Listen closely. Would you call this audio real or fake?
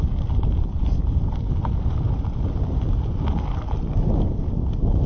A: real